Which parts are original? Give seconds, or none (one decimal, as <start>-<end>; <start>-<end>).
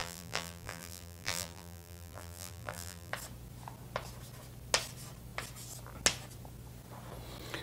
3.1-7.6